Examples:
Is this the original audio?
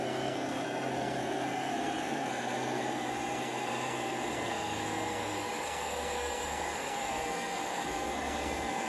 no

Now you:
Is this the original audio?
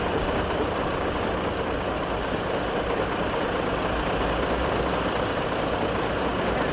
yes